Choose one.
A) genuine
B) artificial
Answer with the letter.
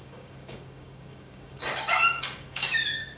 B